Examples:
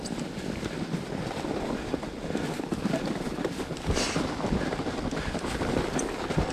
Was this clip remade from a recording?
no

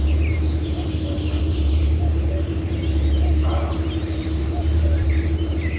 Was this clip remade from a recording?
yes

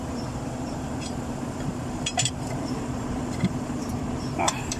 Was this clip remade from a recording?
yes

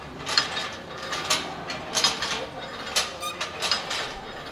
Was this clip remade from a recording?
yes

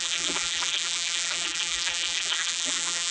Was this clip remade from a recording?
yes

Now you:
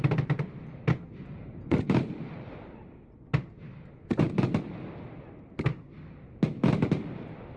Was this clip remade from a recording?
no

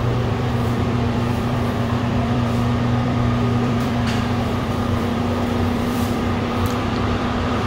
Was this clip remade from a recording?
yes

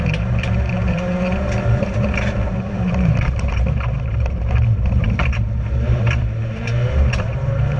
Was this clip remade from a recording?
yes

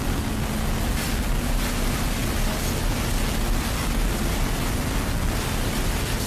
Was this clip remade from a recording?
no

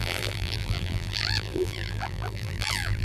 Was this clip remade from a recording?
yes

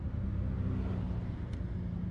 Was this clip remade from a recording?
no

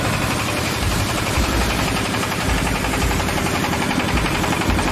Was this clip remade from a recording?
yes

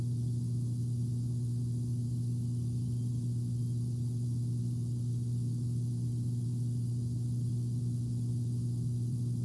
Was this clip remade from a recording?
no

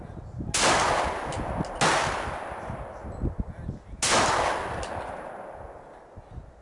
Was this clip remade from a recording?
no